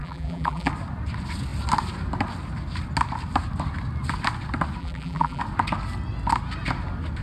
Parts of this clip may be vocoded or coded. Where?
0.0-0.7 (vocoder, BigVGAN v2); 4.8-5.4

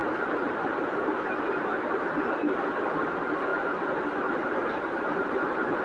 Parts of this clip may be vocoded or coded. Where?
0.0-0.8 (vocoder, BigVGAN v2); 3.5-5.8

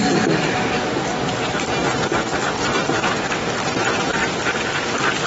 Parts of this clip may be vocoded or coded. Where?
1.8-3.4 (vocoder, BigVGAN v2)

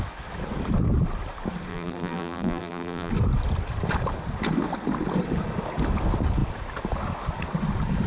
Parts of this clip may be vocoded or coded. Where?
1.7-3.1 (vocoder, BigVGAN v2)